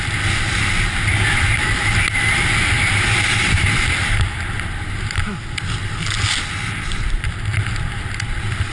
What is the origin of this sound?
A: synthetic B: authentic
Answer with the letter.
B